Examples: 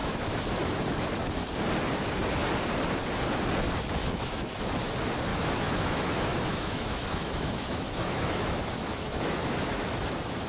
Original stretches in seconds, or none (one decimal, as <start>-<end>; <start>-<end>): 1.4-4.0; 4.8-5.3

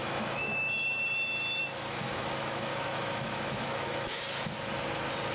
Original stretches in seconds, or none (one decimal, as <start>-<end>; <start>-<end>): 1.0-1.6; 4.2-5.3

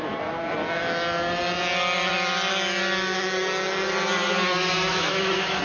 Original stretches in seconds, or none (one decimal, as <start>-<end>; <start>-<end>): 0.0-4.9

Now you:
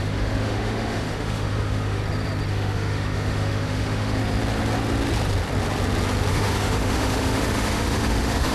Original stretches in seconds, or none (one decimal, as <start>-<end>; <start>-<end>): 2.0-2.5; 4.2-6.3

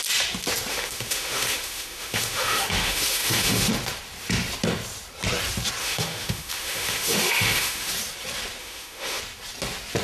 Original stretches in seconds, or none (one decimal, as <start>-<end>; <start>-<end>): 0.0-0.7; 3.7-5.8; 7.9-8.6; 9.2-10.0

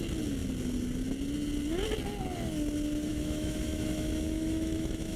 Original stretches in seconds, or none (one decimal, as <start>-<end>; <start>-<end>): 0.0-3.1

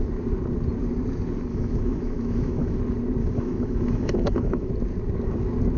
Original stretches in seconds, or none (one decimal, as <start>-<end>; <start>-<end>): 0.0-1.5; 2.8-3.2; 4.7-5.8

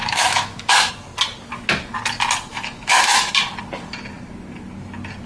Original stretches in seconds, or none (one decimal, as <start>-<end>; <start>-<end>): 0.9-2.5; 3.3-5.3